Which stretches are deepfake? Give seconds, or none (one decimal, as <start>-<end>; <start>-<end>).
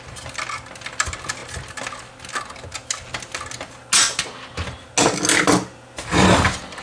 none